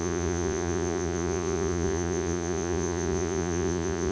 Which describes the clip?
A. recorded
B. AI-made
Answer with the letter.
B